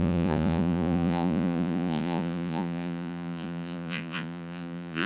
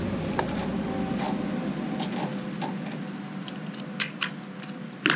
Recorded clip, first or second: second